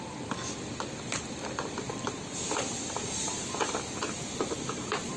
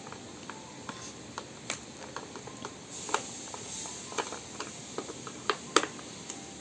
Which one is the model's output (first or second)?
first